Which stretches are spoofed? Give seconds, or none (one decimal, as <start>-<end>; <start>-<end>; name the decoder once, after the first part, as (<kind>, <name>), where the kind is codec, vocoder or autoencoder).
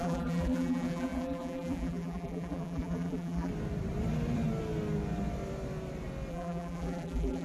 0.0-3.5 (vocoder, BigVGAN v2); 6.3-7.4